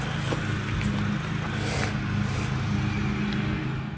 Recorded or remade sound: recorded